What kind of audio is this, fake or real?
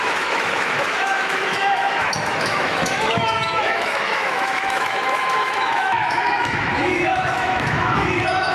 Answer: fake